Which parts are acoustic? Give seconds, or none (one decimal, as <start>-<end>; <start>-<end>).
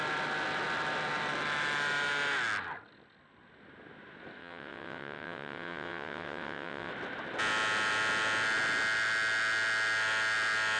0.0-4.4; 6.9-10.8